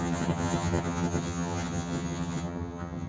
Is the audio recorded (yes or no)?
no